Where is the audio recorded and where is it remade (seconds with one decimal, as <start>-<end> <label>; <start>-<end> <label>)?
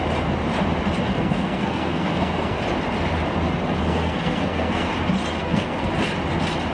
0.0-1.1 recorded; 1.1-2.6 remade; 2.6-3.8 recorded; 3.8-4.9 remade; 4.9-5.4 recorded; 5.4-5.9 remade; 5.9-6.7 recorded